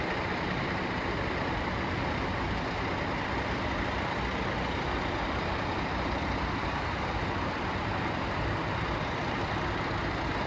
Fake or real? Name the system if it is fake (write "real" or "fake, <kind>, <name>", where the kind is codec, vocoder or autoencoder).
fake, vocoder, BigVGAN v2